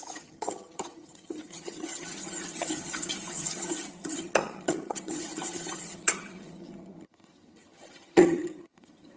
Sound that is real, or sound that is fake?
fake